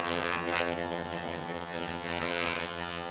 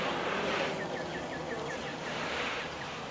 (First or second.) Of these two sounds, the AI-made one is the first